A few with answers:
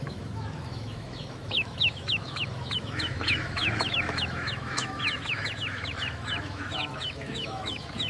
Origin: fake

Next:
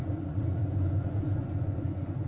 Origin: fake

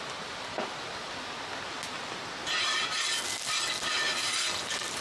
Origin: real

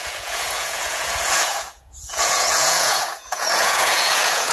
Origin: fake